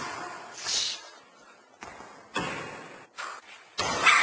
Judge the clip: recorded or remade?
recorded